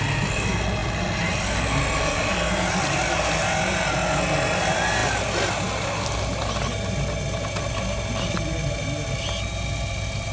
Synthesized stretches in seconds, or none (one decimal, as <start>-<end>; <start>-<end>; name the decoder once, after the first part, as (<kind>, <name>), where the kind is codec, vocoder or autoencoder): none

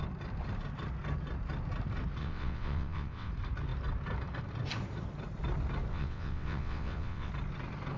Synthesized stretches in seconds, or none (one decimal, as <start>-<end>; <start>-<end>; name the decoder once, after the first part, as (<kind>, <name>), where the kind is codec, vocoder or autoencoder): 2.2-3.3 (vocoder, WaveNeXt); 5.9-7.3

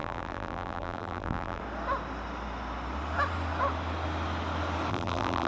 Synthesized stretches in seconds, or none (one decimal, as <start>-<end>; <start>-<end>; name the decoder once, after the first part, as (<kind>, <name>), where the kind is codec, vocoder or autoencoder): 0.0-1.6 (vocoder, BigVGAN v2); 4.9-5.5